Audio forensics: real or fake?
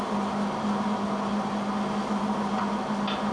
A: real